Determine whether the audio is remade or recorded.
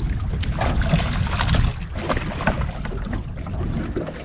recorded